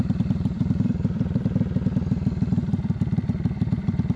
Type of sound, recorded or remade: remade